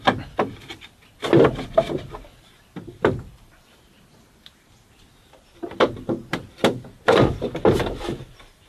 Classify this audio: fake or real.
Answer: real